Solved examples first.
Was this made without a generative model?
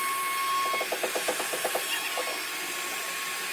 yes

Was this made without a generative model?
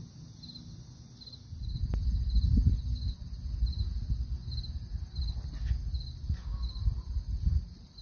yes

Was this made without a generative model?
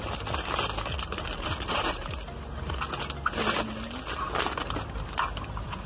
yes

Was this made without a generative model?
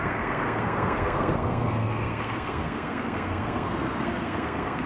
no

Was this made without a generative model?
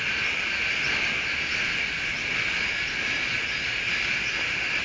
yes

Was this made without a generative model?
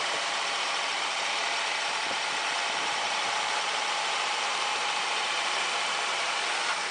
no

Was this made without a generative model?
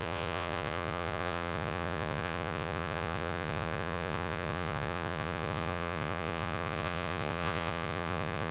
no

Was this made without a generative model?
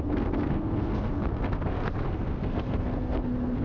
no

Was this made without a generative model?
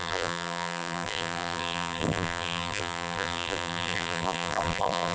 no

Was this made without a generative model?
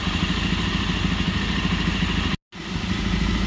yes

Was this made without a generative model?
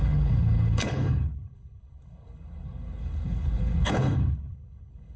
no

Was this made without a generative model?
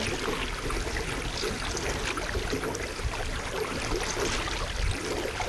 yes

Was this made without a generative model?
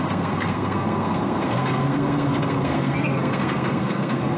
no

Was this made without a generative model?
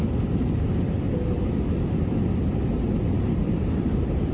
no